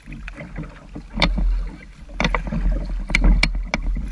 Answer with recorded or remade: recorded